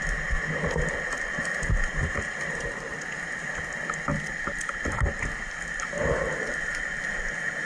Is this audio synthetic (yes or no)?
no